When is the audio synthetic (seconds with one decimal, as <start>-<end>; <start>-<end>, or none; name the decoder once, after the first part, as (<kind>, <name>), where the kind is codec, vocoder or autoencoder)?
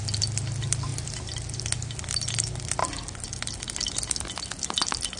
none